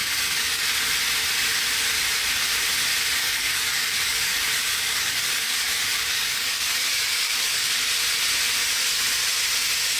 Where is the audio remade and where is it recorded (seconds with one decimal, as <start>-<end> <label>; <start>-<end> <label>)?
0.0-0.6 remade; 0.6-3.2 recorded; 3.2-7.7 remade; 7.7-10.0 recorded